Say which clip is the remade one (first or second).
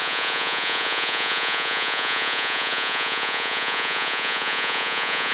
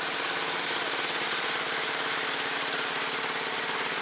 first